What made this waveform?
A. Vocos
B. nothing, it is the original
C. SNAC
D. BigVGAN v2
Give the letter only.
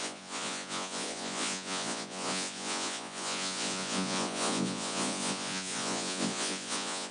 A